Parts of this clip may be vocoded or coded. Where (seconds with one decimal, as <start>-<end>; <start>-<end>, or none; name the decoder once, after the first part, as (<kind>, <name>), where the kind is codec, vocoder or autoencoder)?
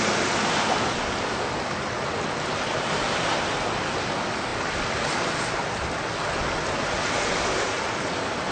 none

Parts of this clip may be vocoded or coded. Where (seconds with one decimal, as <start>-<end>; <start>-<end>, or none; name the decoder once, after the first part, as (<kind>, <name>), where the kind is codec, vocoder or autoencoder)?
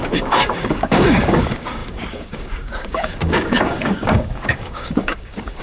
0.0-5.6 (codec, DAC)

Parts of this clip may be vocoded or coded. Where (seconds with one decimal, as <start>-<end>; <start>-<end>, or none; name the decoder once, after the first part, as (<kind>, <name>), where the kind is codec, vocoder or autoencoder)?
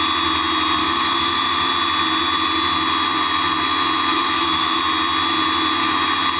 0.8-1.7 (autoencoder, DAC-VAE); 4.1-4.8